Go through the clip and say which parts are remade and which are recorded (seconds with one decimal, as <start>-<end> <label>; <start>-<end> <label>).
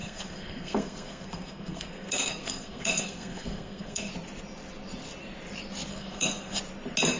0.0-4.1 remade; 4.1-5.9 recorded; 5.9-6.6 remade; 6.6-7.2 recorded